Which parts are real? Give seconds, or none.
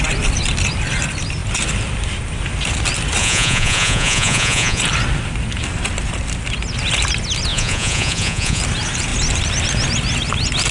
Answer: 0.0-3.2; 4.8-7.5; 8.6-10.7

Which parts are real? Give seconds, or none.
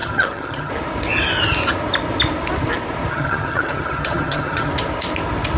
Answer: 0.7-3.1; 4.7-5.6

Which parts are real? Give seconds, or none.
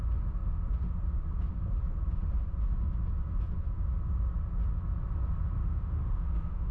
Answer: 0.0-5.6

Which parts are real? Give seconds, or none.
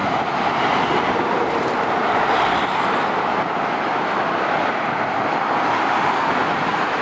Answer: 3.0-6.5